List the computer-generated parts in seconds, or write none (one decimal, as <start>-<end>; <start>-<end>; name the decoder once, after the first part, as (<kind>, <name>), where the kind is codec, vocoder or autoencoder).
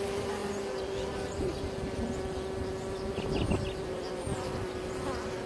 none